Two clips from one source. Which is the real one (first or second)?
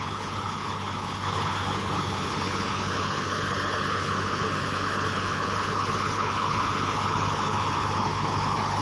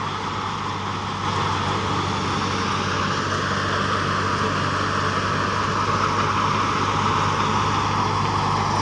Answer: second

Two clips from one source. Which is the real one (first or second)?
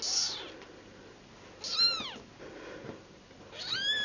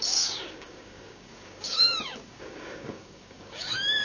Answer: first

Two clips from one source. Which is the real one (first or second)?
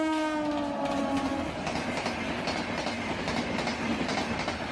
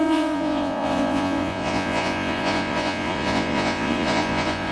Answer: first